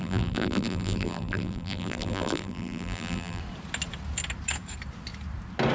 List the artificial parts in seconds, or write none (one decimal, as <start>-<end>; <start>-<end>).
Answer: 0.0-3.4